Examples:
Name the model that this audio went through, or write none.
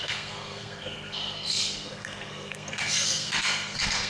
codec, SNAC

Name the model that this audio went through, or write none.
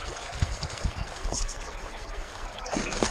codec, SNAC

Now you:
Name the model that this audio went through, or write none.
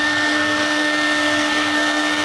codec, SNAC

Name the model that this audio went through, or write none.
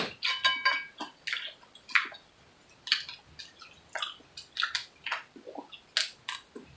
none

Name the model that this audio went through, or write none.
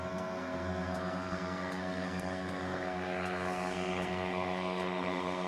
codec, SNAC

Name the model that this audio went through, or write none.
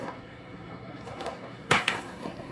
codec, SNAC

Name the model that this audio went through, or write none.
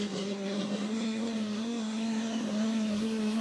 codec, SNAC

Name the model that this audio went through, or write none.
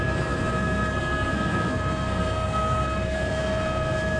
codec, SNAC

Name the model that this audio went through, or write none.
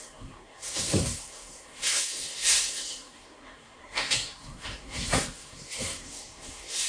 codec, SNAC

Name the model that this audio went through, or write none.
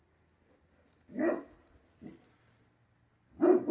none